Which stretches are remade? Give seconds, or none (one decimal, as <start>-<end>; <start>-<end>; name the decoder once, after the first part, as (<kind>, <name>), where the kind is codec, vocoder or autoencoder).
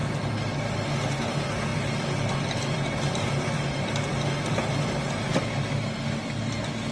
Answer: none